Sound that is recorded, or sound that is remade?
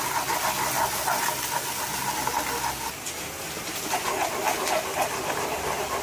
recorded